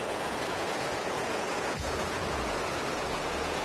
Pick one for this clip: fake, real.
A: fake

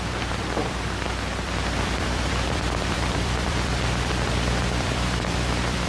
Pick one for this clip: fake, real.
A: fake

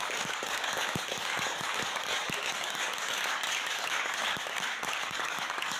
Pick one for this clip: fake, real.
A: fake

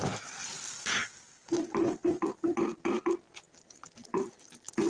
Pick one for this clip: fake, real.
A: real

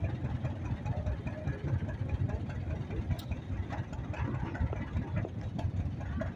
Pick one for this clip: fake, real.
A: real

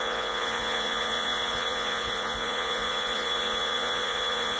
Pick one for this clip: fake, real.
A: fake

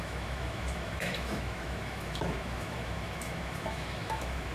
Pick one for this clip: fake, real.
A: fake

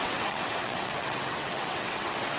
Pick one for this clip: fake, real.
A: fake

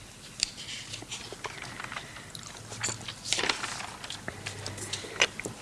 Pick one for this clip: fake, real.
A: real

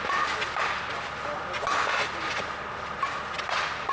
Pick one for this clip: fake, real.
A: real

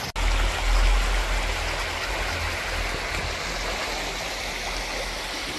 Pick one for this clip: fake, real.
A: real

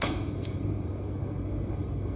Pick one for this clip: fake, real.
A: fake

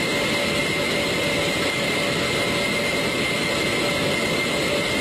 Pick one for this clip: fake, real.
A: real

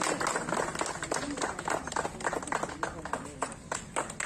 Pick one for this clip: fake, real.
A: real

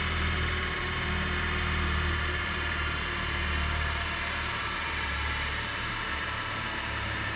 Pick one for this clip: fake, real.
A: fake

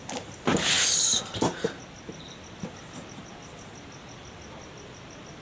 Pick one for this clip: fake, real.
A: real